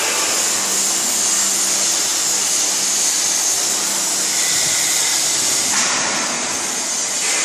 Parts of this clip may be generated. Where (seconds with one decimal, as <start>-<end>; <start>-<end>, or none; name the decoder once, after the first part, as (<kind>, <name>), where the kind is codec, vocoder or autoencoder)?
none